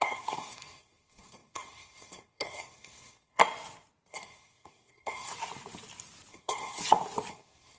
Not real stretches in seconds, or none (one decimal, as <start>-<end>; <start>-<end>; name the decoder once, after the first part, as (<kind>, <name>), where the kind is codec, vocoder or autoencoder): 0.0-3.4 (codec, SNAC); 4.1-5.3; 6.3-6.8; 7.3-7.8